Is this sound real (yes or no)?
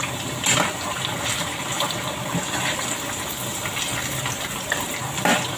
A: yes